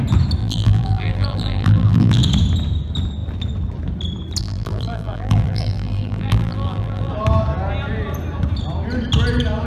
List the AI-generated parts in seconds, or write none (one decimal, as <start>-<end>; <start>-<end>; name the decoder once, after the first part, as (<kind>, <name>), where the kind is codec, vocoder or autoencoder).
0.4-2.2 (vocoder, BigVGAN v2); 4.4-7.1

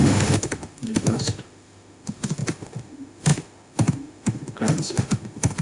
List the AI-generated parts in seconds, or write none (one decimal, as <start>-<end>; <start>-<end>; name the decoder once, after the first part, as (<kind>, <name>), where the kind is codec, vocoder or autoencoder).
0.0-5.6 (autoencoder, DAC-VAE)

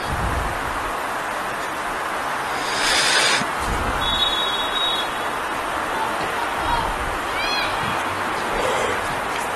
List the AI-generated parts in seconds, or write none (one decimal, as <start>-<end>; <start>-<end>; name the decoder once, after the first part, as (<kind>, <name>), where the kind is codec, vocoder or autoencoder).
none

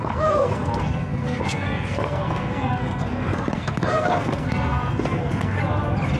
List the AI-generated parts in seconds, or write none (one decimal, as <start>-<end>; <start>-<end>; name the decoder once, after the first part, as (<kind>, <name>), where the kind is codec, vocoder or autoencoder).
0.0-5.6 (codec, SNAC)

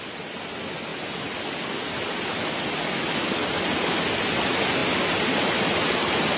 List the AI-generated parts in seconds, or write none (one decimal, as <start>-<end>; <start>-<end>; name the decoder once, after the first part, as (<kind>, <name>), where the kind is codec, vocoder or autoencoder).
none

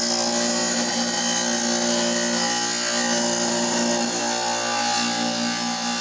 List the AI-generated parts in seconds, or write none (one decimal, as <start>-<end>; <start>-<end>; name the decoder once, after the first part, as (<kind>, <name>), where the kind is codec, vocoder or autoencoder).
none

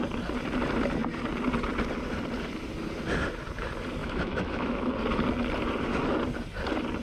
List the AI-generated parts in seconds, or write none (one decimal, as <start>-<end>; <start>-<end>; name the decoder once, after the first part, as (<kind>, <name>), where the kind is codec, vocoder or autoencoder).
4.0-4.9 (autoencoder, DAC-VAE)

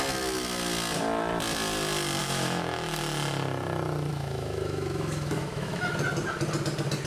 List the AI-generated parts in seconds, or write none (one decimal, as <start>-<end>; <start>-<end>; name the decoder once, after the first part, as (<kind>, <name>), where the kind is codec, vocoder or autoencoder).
2.2-3.0 (autoencoder, DAC-VAE); 4.1-5.9